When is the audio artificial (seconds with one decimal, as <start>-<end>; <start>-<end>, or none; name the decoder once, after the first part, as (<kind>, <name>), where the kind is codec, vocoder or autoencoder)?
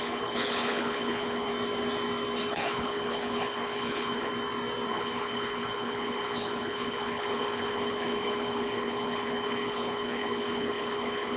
0.0-1.5 (codec, HILCodec); 2.5-4.3; 4.9-11.4